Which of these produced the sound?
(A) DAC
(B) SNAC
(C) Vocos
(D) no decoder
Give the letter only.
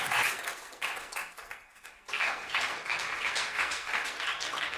B